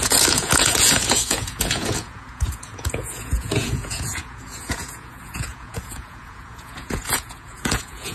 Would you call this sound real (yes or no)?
no